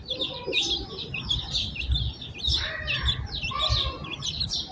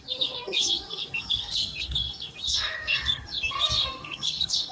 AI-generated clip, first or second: second